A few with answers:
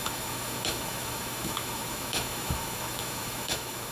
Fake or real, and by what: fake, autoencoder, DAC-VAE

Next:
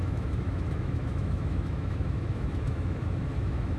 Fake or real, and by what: fake, autoencoder, DAC-VAE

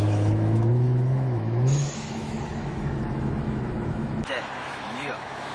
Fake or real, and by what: fake, autoencoder, DAC-VAE